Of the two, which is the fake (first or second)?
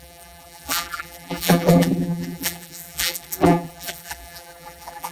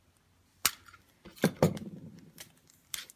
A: first